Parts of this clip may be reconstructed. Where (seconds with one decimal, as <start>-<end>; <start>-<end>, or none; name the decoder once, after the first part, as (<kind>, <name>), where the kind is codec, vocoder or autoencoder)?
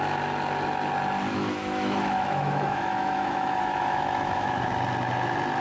1.3-4.6 (autoencoder, DAC-VAE)